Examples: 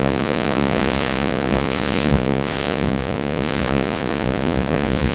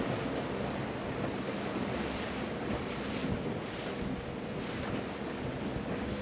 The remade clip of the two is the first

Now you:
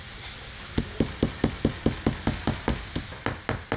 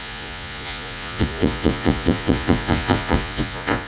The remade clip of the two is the second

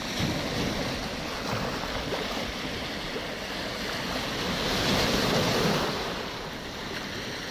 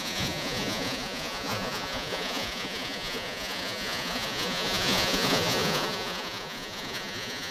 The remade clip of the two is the second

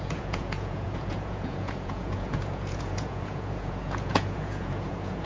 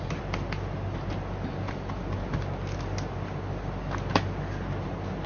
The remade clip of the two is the first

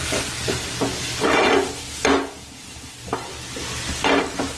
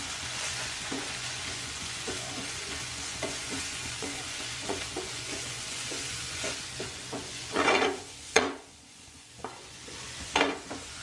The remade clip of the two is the second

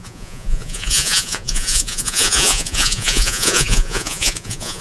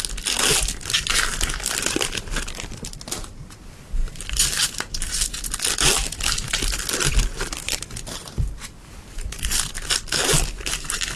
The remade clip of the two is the first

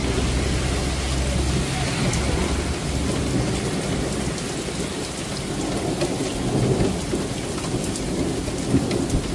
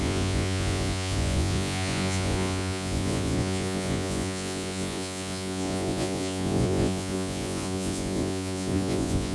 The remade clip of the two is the second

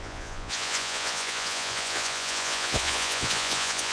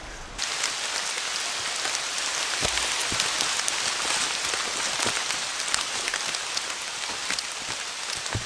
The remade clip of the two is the first